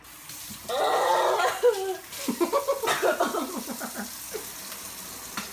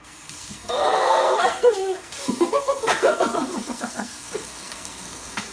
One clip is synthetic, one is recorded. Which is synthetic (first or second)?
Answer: second